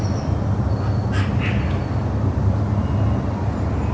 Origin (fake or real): real